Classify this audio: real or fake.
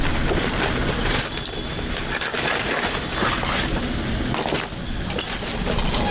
real